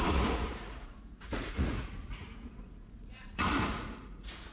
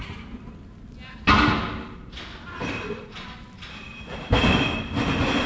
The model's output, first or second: first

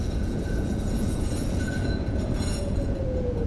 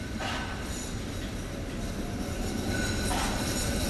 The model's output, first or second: first